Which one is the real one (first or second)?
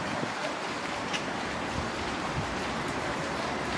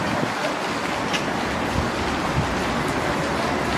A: second